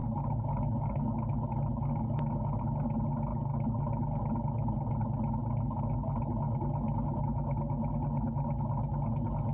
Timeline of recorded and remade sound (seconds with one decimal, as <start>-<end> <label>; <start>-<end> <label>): 0.0-9.5 recorded